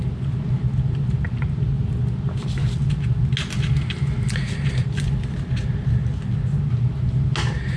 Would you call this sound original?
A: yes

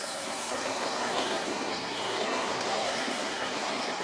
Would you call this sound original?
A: no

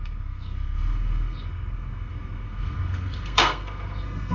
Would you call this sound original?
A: no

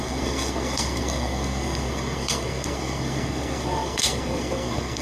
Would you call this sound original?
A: no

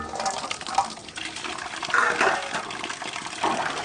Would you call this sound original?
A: yes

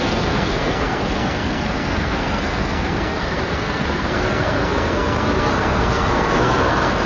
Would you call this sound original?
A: no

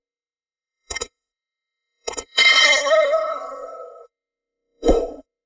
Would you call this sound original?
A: no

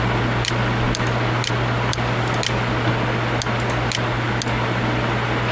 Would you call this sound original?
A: yes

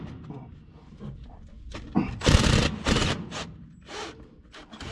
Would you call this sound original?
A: yes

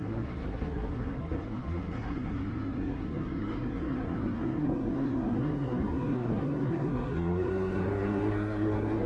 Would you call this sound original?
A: no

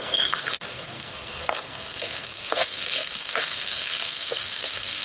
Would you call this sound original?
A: no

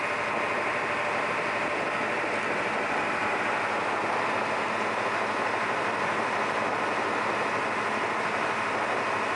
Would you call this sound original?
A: yes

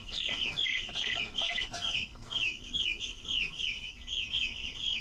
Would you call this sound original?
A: no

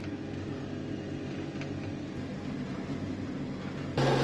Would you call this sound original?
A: yes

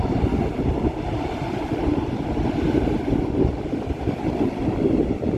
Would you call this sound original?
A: yes